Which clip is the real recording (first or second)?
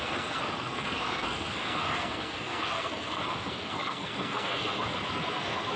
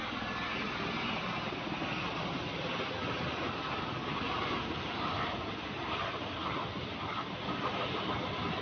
second